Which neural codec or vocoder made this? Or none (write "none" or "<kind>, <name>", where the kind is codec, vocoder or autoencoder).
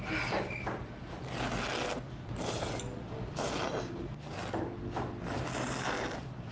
none